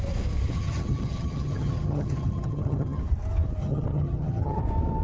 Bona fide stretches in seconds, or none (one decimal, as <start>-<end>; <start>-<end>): 0.0-0.5; 3.0-3.6; 4.6-5.0